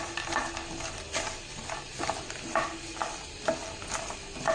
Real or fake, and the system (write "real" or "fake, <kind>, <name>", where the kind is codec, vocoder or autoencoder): real